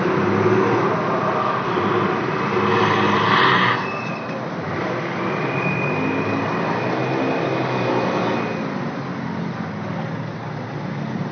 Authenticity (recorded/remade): recorded